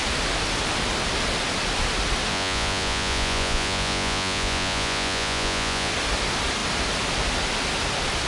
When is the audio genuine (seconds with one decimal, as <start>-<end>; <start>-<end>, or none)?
0.0-2.3; 5.9-8.3